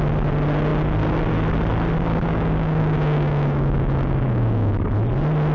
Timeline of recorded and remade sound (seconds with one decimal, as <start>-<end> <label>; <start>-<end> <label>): 0.0-2.1 recorded; 2.1-4.9 remade; 4.9-5.5 recorded